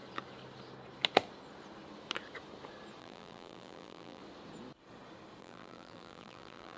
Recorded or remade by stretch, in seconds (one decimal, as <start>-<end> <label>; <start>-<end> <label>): 0.0-3.0 recorded; 3.0-4.2 remade; 4.2-5.4 recorded; 5.4-6.8 remade